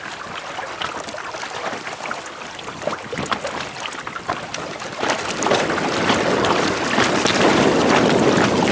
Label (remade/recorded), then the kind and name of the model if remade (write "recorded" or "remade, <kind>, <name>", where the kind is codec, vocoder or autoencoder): recorded